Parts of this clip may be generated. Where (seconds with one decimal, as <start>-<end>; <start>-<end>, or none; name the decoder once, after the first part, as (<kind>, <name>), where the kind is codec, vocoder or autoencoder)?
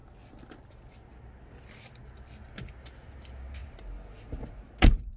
none